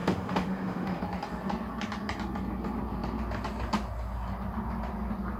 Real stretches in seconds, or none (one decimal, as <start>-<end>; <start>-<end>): 1.0-5.4